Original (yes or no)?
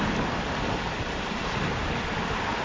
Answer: yes